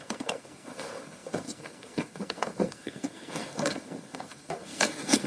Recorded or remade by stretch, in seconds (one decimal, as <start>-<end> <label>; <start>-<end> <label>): 0.0-5.3 remade